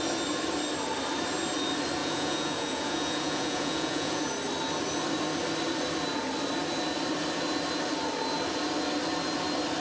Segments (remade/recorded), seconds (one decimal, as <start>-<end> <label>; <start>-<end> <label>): 0.0-2.0 recorded; 2.0-4.2 remade; 4.2-9.8 recorded